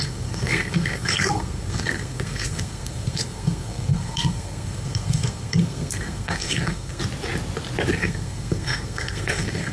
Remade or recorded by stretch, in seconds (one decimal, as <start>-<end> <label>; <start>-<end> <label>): 0.0-7.0 remade; 7.0-7.9 recorded; 7.9-9.7 remade